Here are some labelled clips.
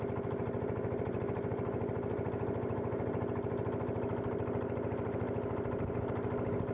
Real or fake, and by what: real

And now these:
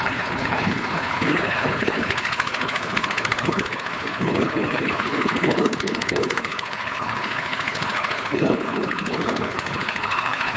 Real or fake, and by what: fake, codec, HILCodec